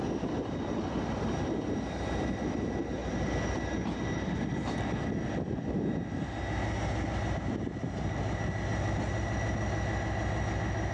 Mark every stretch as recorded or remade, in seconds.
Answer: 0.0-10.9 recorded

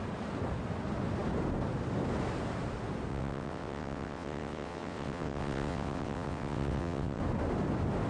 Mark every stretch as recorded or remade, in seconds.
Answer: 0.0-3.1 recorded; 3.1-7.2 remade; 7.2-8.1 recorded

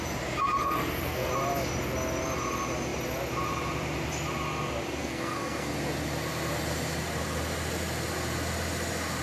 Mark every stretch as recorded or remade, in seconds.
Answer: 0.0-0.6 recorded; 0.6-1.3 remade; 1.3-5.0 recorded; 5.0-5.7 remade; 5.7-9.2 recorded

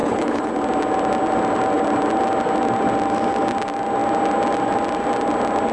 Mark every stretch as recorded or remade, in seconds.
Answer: 0.0-0.5 remade; 0.5-5.7 recorded